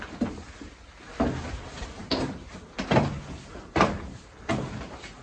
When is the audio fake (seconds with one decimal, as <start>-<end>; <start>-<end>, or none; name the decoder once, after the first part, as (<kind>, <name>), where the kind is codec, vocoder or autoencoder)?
none